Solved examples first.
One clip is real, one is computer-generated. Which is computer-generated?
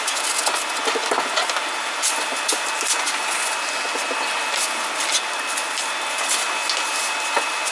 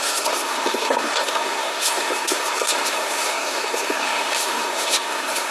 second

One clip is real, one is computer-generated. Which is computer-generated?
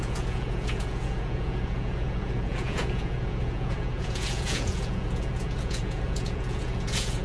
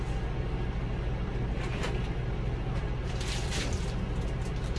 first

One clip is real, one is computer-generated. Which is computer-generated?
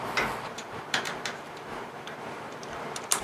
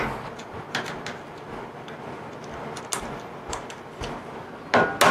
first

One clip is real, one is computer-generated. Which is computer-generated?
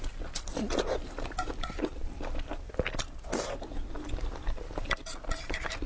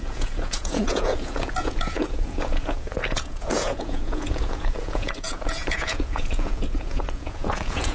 second